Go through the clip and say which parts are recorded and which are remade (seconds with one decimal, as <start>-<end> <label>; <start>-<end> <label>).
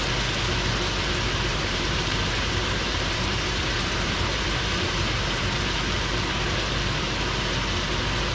0.0-1.5 recorded; 1.5-6.0 remade; 6.0-8.3 recorded